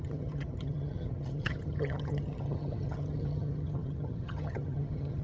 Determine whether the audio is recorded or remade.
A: remade